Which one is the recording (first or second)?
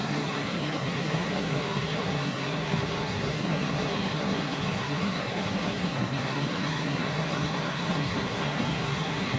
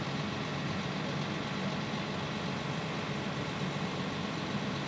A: second